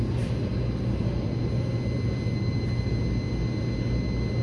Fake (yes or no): no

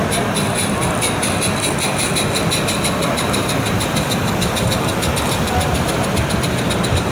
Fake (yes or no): no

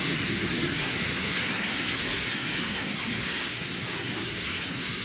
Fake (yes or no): yes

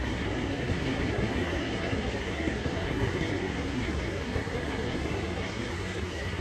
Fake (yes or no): yes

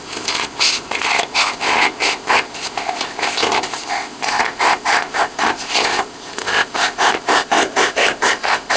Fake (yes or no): yes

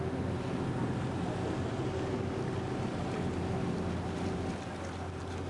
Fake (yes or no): no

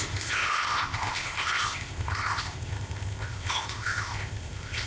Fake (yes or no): yes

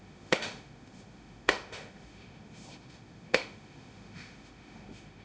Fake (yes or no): yes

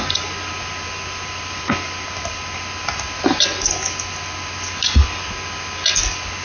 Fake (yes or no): no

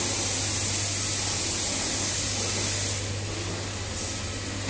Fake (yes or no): no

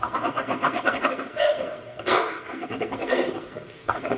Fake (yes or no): yes